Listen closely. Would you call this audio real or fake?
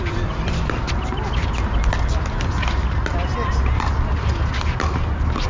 real